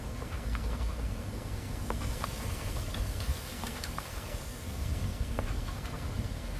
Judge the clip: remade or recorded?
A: remade